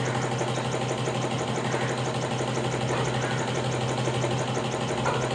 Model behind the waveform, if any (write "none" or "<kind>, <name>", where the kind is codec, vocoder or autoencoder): none